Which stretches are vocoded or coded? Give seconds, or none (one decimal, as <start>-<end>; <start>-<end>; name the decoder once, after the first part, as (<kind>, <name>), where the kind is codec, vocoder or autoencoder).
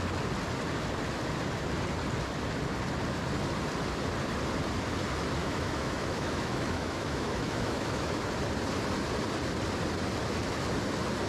5.4-8.3 (autoencoder, DAC-VAE)